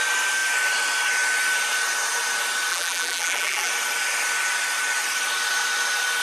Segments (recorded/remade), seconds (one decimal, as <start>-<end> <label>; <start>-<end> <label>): 0.0-2.7 recorded; 2.7-3.7 remade; 3.7-6.2 recorded